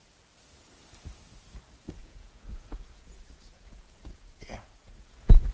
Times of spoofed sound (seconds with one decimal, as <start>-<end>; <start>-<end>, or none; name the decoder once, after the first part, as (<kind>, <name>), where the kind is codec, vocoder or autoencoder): 2.0-5.5 (vocoder, Vocos)